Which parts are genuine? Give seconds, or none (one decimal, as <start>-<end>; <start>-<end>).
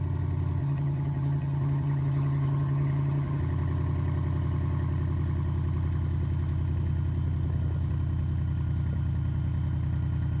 0.0-0.6; 3.4-10.4